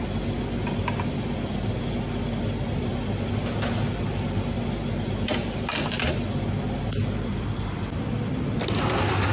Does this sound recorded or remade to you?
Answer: recorded